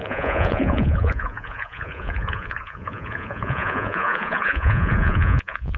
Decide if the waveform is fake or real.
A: fake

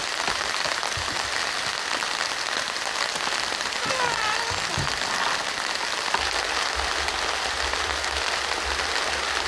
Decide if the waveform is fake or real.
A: real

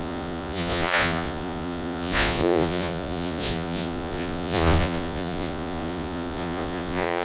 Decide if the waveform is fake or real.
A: fake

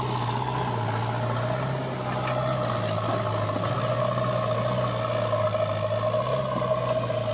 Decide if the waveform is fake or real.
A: real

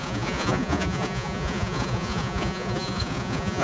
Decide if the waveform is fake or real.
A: fake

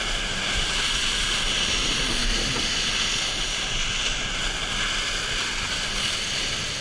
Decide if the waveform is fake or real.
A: real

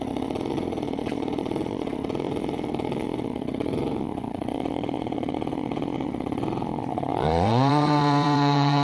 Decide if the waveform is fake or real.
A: fake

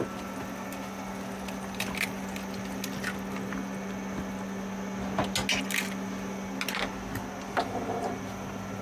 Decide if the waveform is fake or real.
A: real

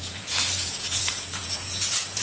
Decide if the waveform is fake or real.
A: fake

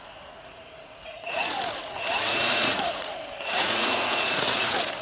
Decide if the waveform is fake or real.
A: fake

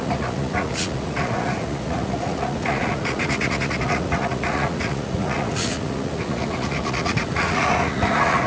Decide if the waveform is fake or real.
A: fake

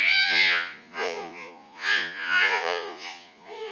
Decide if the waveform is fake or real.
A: fake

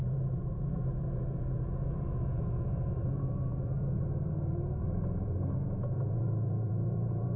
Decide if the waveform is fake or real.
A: fake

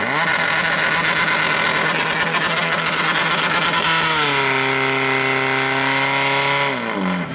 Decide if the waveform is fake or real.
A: real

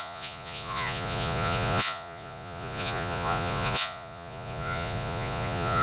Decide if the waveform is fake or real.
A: fake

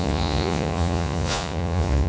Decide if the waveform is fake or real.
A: fake